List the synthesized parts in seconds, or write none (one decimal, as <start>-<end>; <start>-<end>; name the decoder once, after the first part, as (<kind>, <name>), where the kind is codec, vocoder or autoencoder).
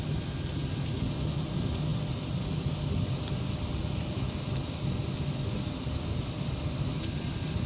none